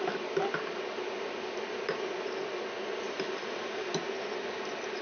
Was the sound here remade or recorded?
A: recorded